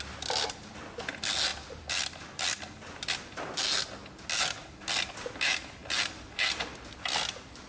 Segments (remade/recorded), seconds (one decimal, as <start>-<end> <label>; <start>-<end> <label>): 0.0-1.5 recorded; 1.5-3.0 remade; 3.0-5.8 recorded; 5.8-6.9 remade; 6.9-7.7 recorded